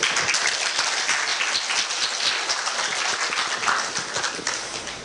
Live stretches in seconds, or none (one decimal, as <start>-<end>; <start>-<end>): 0.0-5.0